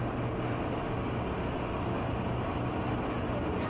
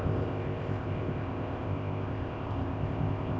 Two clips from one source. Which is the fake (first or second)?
second